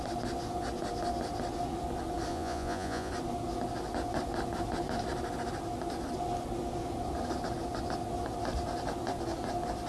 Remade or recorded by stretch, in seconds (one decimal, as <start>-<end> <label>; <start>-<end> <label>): 0.0-2.3 recorded; 2.3-3.1 remade; 3.1-9.9 recorded